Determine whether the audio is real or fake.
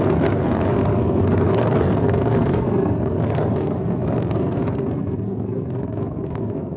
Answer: fake